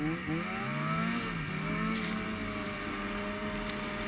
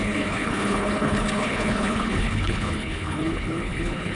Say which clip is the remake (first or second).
second